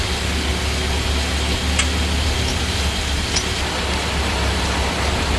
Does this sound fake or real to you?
real